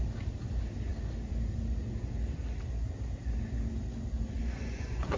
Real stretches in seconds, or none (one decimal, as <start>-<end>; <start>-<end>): 0.0-4.4